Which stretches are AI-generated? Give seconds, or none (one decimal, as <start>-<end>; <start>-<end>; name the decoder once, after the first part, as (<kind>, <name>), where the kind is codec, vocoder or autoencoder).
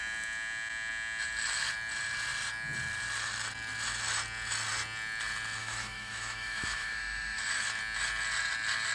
5.6-7.4 (autoencoder, DAC-VAE)